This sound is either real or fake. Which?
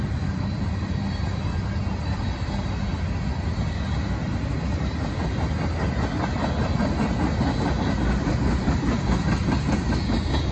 real